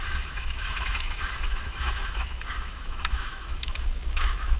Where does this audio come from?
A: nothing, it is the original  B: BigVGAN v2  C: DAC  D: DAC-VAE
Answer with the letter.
D